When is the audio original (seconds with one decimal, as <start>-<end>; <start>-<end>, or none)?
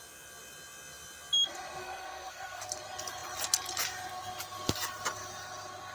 0.0-1.8; 2.7-5.9